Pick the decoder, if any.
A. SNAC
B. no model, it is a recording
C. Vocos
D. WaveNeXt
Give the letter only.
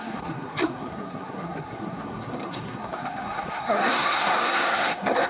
A